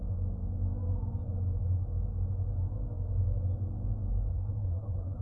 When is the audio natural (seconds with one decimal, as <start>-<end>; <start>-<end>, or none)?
0.0-4.3